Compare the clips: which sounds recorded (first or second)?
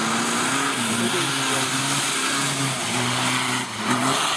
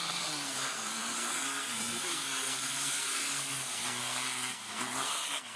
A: first